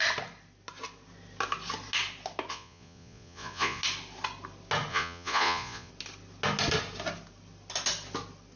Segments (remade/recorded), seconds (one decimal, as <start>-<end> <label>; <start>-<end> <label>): 0.0-2.5 recorded; 2.5-3.8 remade; 3.8-4.9 recorded; 4.9-5.9 remade; 5.9-8.6 recorded